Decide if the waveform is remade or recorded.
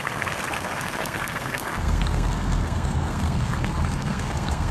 remade